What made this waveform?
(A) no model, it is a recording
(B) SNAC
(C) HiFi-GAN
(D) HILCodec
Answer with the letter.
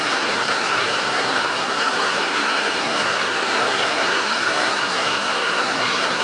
B